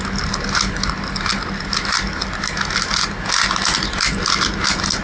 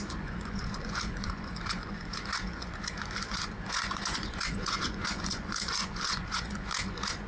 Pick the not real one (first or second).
second